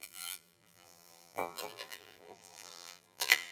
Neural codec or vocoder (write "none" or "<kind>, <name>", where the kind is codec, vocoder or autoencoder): vocoder, BigVGAN v2